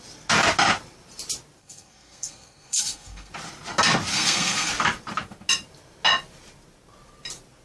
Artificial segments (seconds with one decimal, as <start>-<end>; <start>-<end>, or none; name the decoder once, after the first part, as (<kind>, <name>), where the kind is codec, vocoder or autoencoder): 1.6-3.3 (codec, SNAC); 4.1-4.7